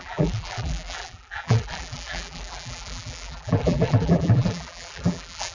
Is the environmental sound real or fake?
fake